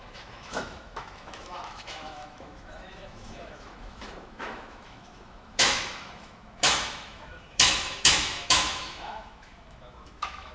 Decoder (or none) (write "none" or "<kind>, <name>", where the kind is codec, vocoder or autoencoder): autoencoder, DAC-VAE